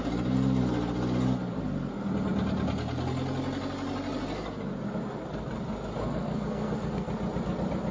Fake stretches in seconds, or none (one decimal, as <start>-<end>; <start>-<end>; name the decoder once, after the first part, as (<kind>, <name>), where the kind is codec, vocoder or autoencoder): 6.1-7.1 (codec, SNAC)